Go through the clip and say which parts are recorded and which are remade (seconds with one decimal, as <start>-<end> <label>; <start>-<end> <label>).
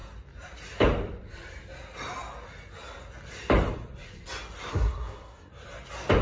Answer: 0.0-4.7 recorded; 4.7-5.5 remade; 5.5-6.2 recorded